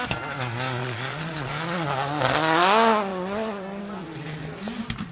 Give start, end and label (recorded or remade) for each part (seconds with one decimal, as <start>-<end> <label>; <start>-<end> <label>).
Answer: 0.0-0.8 recorded; 0.8-1.5 remade; 1.5-5.1 recorded

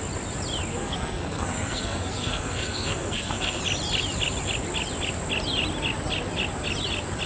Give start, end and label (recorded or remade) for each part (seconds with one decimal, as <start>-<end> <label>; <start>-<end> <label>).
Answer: 0.0-0.7 recorded; 0.7-3.6 remade; 3.6-7.3 recorded

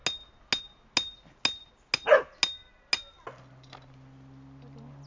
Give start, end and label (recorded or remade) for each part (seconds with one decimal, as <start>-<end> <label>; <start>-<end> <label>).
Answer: 0.0-5.1 recorded

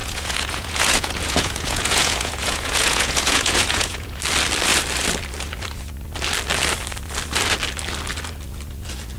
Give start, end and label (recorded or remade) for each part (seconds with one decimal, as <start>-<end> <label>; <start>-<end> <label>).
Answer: 0.0-4.2 remade; 4.2-9.2 recorded

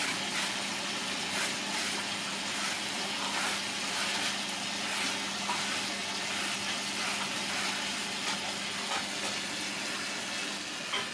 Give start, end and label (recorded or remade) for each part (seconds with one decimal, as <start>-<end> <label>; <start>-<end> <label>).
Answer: 0.0-11.1 recorded

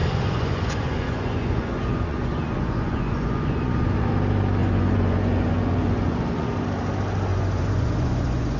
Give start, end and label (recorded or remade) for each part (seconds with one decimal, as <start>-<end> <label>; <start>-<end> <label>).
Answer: 0.0-4.1 remade; 4.1-4.6 recorded; 4.6-6.5 remade; 6.5-7.3 recorded; 7.3-8.6 remade

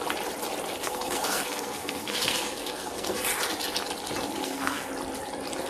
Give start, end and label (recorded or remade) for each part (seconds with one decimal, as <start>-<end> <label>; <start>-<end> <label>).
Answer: 0.0-0.8 recorded; 0.8-3.3 remade; 3.3-4.4 recorded; 4.4-4.9 remade; 4.9-5.7 recorded